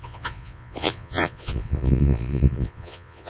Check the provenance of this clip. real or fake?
fake